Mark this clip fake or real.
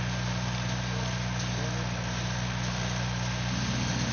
real